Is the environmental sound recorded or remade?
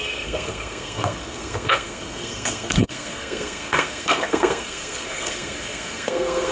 remade